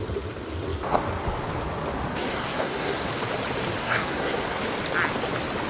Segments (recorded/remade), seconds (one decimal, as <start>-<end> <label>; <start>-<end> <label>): 0.0-2.1 recorded; 2.1-3.1 remade; 3.1-3.8 recorded; 3.8-4.6 remade; 4.6-5.7 recorded